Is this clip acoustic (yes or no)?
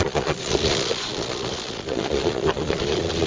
no